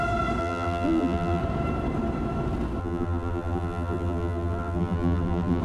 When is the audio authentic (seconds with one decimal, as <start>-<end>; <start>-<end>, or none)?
0.0-0.4; 1.4-2.8